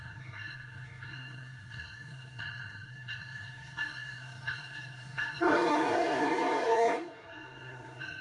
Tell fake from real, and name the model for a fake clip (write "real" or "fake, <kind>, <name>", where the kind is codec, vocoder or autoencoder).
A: fake, codec, SNAC